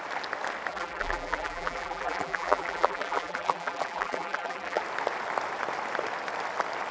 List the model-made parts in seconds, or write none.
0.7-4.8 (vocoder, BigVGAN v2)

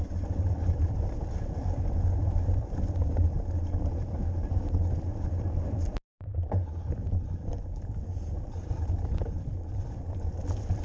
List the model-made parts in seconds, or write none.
0.0-3.2 (vocoder, BigVGAN v2); 4.4-10.8